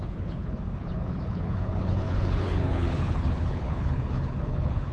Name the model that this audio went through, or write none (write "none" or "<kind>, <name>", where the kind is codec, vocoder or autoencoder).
codec, HILCodec